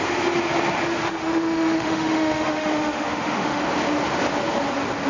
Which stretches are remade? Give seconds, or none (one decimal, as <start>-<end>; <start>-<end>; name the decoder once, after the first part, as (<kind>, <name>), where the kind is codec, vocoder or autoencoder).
1.0-3.6 (autoencoder, DAC-VAE)